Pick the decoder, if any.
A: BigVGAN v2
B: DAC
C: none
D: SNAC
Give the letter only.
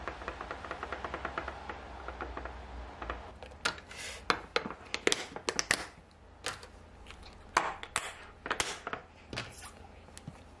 C